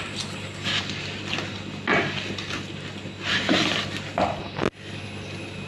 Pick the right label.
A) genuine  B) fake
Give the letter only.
A